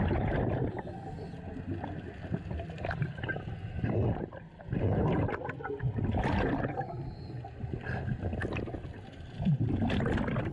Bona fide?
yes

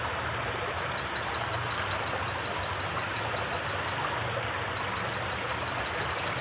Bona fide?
yes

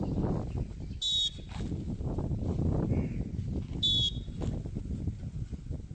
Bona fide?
yes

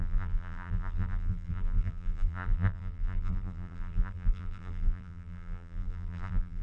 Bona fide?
no